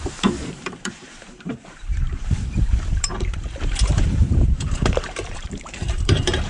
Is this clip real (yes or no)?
no